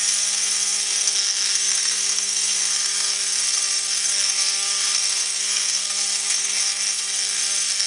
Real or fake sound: fake